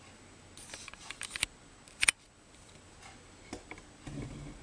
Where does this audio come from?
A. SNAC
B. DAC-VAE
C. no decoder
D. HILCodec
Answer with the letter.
C